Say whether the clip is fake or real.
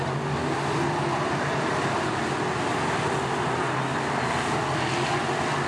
real